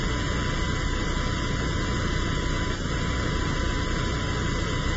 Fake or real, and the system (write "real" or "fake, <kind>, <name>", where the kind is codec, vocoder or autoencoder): real